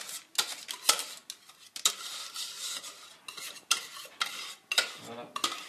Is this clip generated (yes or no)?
no